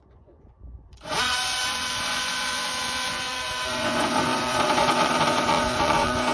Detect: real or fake fake